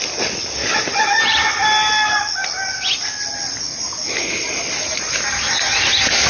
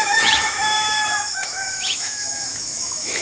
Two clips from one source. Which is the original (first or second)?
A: first